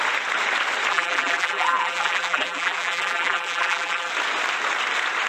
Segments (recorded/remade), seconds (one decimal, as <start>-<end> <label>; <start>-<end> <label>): 0.0-0.9 recorded; 0.9-4.1 remade; 4.1-5.3 recorded